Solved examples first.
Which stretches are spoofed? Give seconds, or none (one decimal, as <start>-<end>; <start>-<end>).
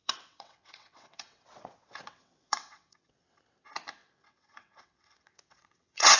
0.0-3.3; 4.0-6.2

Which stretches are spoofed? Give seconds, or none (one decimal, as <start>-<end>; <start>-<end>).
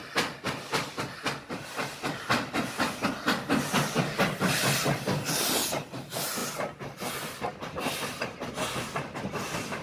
none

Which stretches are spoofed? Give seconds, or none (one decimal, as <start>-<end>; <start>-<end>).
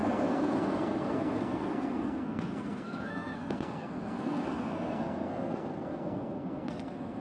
0.0-7.2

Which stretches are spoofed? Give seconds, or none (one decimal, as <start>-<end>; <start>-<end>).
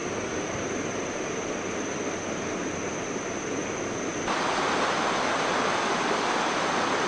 none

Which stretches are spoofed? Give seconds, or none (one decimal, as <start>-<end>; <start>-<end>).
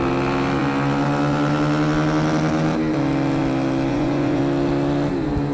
3.9-4.4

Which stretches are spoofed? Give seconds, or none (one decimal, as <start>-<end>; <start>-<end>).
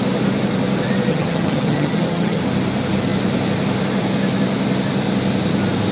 1.1-2.4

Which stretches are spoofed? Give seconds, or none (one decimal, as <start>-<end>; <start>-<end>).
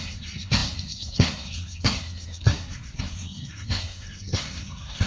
0.0-5.1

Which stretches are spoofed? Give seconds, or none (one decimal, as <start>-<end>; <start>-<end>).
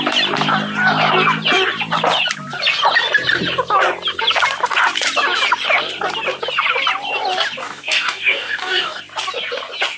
7.6-9.0